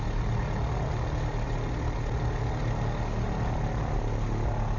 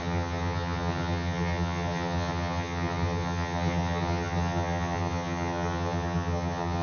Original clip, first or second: first